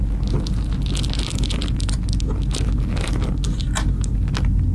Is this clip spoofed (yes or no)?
no